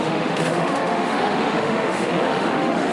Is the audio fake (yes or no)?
yes